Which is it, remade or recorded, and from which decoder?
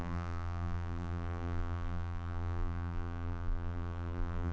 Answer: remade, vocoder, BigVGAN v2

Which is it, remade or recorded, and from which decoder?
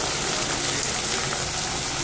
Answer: recorded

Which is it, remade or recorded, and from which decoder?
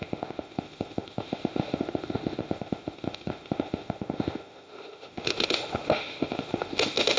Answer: remade, autoencoder, DAC-VAE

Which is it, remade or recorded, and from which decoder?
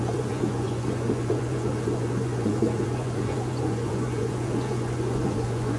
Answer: remade, vocoder, Vocos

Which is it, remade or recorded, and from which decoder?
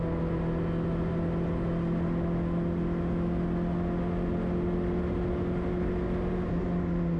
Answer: recorded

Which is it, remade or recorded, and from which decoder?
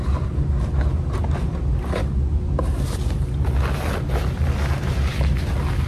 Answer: recorded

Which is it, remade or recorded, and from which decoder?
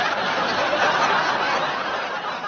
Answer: recorded